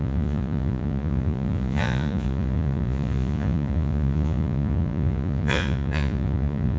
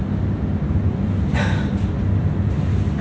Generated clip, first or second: first